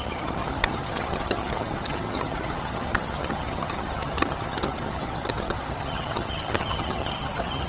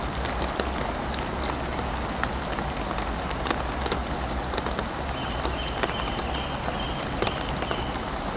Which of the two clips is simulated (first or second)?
first